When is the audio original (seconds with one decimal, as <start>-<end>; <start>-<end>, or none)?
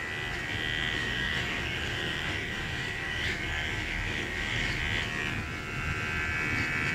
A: 0.0-1.0; 4.8-6.9